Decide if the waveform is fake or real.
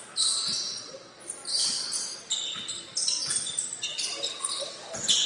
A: real